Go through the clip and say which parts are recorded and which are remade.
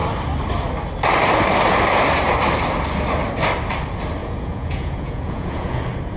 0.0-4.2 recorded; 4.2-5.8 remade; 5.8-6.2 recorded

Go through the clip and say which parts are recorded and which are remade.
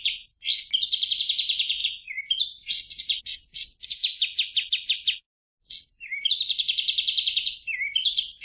0.0-8.4 recorded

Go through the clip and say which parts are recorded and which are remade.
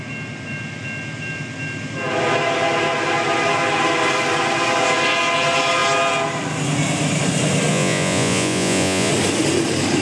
0.0-7.7 recorded; 7.7-9.1 remade; 9.1-10.0 recorded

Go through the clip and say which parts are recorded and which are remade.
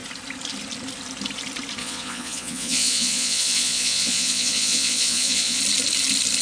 0.0-1.8 recorded; 1.8-5.6 remade; 5.6-6.4 recorded